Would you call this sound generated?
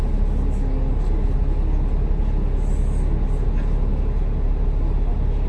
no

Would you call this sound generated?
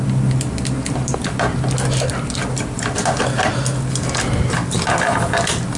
no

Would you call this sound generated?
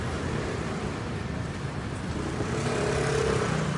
yes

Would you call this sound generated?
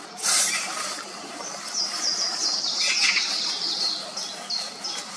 no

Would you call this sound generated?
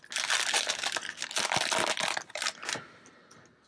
no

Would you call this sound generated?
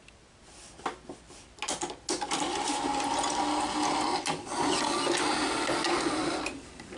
no